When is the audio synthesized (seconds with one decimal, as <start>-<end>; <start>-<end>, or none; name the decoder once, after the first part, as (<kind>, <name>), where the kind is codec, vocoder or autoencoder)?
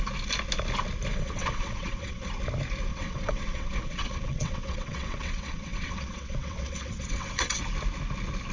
1.1-2.3 (vocoder, WaveNeXt); 2.9-7.6